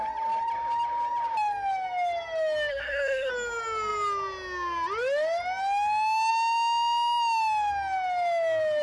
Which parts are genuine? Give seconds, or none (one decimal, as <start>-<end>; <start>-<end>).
0.0-2.7; 3.3-8.8

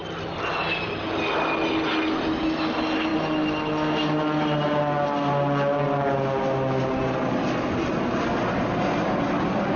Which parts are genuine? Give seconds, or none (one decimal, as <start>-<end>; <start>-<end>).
0.0-9.8

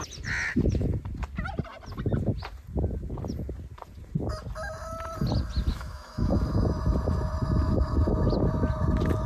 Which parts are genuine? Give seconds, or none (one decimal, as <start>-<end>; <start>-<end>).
0.0-5.7; 6.3-9.3

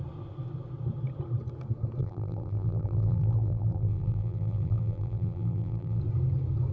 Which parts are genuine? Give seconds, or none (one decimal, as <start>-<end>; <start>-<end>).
0.0-2.0; 6.0-6.7

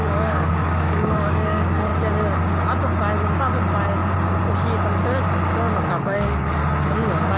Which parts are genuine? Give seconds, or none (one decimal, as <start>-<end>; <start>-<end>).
1.9-5.9; 6.6-7.4